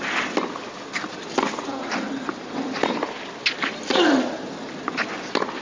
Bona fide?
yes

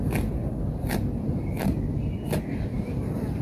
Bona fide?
yes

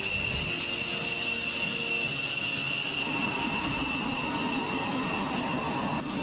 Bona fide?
yes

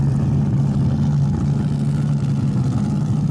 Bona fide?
yes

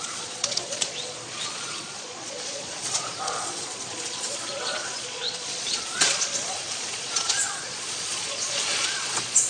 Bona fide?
no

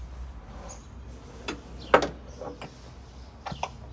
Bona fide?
yes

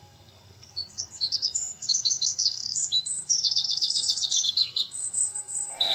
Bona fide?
no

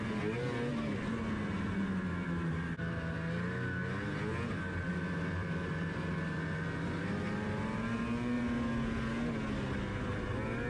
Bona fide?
yes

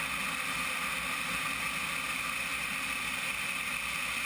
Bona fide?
yes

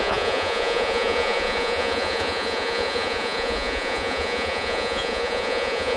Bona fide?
no